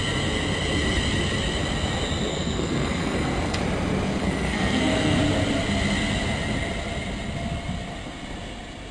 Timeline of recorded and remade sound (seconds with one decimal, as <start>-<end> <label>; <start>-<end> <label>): 0.0-2.3 recorded; 2.3-3.6 remade; 3.6-4.2 recorded; 4.2-5.2 remade; 5.2-8.9 recorded